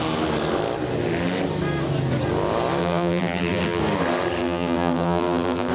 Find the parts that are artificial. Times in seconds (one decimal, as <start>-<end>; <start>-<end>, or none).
2.8-3.8; 4.4-5.7